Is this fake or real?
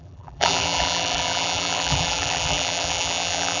fake